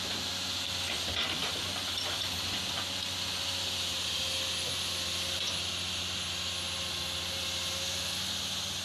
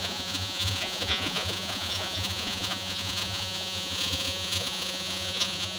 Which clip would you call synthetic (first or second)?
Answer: second